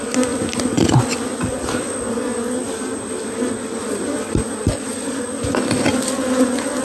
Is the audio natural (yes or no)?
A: yes